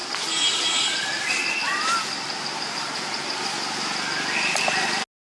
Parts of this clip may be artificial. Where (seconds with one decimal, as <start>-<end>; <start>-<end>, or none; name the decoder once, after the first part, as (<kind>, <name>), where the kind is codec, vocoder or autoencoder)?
none